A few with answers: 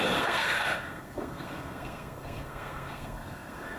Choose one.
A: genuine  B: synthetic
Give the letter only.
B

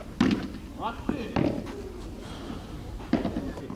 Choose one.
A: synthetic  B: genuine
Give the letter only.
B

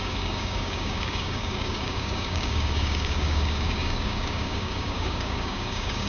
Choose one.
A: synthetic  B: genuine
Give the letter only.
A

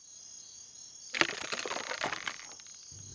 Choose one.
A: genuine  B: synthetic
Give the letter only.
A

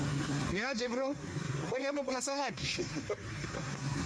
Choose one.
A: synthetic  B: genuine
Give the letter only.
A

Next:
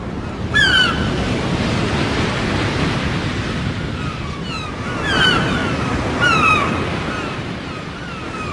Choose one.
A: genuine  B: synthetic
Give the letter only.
A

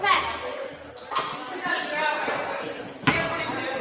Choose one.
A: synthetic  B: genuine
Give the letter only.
B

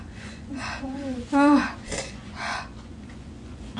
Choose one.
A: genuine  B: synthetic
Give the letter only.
B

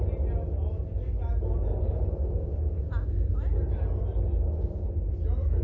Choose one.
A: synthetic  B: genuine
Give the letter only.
B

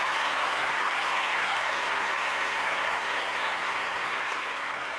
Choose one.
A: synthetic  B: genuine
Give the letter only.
A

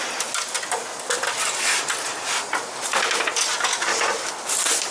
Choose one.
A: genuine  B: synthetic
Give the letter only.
A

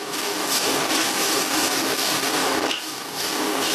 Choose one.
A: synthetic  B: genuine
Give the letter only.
A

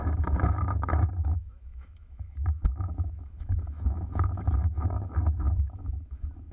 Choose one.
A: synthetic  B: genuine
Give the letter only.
A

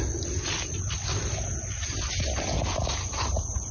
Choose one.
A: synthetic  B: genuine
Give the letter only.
B